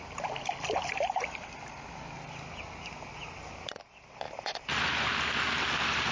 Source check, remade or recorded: recorded